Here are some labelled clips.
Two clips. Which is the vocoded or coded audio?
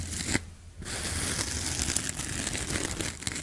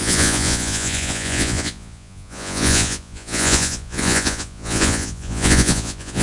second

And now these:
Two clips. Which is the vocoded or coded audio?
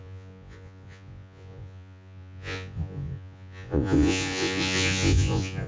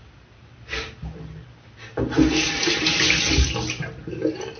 first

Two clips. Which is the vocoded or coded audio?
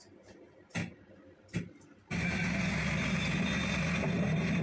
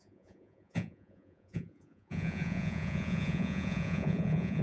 second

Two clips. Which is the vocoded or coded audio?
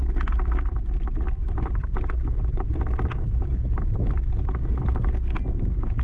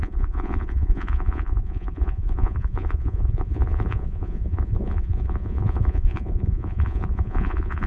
second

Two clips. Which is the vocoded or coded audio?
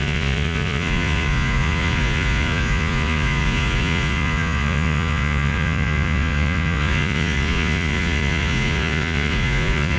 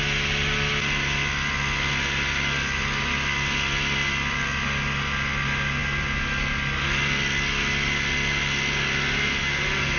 first